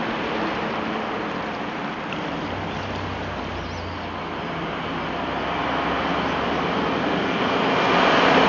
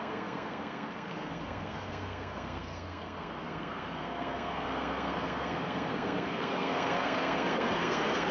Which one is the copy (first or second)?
second